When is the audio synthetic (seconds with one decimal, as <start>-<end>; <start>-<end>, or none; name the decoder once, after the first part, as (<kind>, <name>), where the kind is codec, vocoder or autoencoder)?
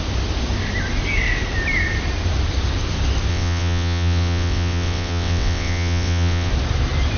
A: 3.3-6.5 (vocoder, WaveNeXt)